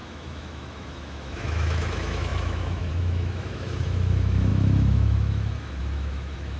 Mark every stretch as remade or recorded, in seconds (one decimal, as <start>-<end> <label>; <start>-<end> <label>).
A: 0.0-6.6 remade